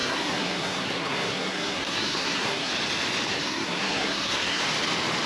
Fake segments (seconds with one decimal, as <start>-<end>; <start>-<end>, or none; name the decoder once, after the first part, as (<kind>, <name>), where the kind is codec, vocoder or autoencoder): 0.0-2.7 (codec, SNAC); 3.3-4.6